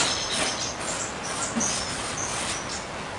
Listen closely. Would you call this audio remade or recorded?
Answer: recorded